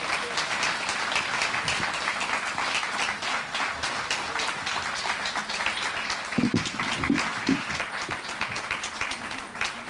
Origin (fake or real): real